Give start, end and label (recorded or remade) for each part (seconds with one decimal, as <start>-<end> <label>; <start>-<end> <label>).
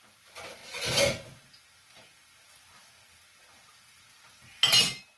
0.0-5.2 recorded